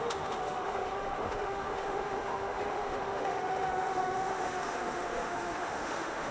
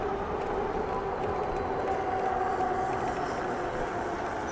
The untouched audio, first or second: second